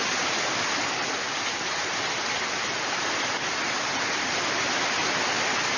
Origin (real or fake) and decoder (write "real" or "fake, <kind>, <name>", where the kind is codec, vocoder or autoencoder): real